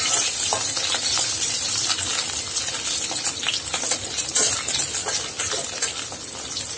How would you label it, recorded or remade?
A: recorded